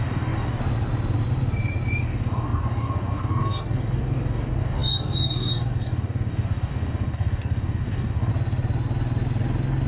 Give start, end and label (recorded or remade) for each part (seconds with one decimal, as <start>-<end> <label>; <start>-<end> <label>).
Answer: 0.0-0.6 remade; 0.6-2.0 recorded; 2.0-8.3 remade; 8.3-9.9 recorded